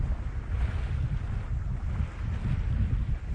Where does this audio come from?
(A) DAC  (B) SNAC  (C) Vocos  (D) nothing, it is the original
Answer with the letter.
D